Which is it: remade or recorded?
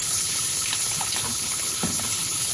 remade